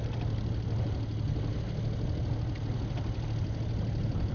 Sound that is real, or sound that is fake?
real